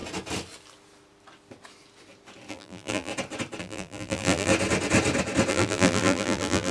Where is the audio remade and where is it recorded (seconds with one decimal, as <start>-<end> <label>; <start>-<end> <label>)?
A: 0.0-2.5 recorded; 2.5-3.1 remade; 3.1-3.6 recorded; 3.6-4.5 remade; 4.5-5.5 recorded; 5.5-6.7 remade